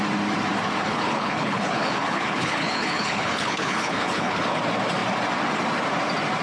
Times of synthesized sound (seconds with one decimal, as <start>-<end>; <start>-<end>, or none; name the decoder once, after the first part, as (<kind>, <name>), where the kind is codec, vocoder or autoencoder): 0.8-4.6 (codec, HILCodec)

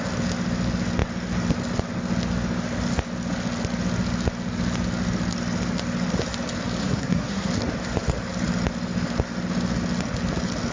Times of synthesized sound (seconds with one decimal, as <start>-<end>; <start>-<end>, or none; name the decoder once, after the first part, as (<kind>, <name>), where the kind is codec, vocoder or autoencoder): 6.8-7.5 (codec, SNAC)

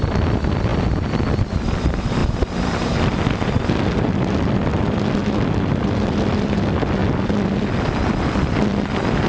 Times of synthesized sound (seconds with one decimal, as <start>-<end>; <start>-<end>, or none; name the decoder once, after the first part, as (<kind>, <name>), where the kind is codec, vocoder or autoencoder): 0.0-5.2 (vocoder, BigVGAN v2); 5.7-7.0; 8.0-9.3